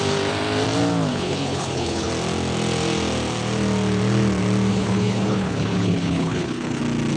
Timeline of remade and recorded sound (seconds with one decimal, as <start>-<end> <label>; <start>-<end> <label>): 0.0-1.1 recorded; 1.1-2.1 remade; 2.1-4.7 recorded; 4.7-6.8 remade; 6.8-7.2 recorded